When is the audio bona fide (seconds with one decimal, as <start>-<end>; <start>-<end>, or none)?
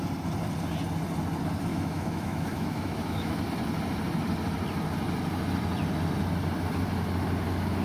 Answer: 0.0-1.7; 3.4-7.8